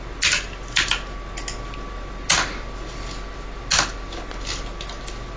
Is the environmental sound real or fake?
real